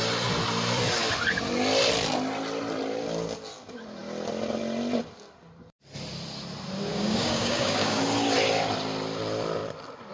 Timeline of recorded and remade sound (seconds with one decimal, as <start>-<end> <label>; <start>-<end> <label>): 0.0-6.9 recorded; 6.9-8.0 remade; 8.0-10.1 recorded